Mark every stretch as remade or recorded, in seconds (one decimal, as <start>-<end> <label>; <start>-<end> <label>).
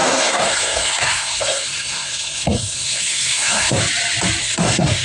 0.0-3.8 remade; 3.8-4.4 recorded; 4.4-5.0 remade